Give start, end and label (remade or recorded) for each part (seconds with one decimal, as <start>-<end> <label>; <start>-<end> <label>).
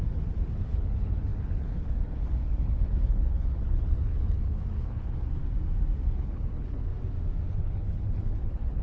0.0-5.4 remade; 5.4-6.0 recorded; 6.0-6.9 remade; 6.9-7.5 recorded; 7.5-8.8 remade